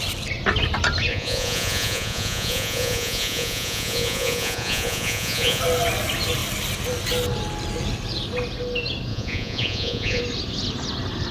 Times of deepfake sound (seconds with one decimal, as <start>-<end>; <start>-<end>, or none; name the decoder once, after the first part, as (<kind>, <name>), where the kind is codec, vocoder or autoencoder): 1.1-5.6 (vocoder, Vocos); 9.1-10.2